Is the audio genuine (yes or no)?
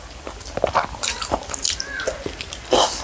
no